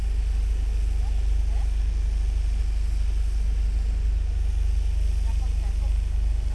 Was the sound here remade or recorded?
recorded